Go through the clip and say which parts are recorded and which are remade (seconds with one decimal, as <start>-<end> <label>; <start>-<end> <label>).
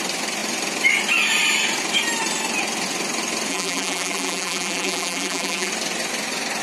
0.0-3.5 recorded; 3.5-5.7 remade; 5.7-6.6 recorded